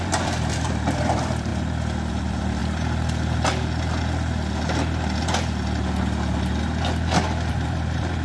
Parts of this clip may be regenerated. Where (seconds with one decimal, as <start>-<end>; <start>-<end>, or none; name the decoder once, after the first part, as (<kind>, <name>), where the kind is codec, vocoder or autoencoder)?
0.0-1.5 (vocoder, BigVGAN v2); 2.1-2.6; 7.5-8.2